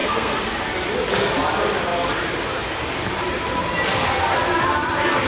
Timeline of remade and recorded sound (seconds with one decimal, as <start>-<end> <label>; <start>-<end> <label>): 0.0-0.6 remade; 0.6-5.3 recorded